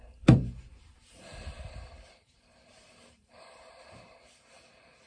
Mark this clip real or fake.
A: fake